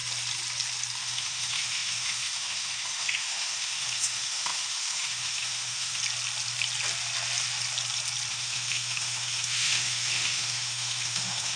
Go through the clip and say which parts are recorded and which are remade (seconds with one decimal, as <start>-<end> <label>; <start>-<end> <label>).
0.0-1.0 recorded; 1.0-6.0 remade; 6.0-8.3 recorded; 8.3-11.6 remade